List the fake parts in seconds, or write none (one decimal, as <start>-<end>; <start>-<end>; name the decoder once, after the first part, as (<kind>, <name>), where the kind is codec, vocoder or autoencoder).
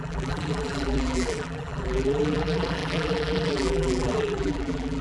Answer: 0.0-5.0 (vocoder, BigVGAN v2)